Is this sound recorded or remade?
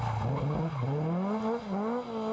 recorded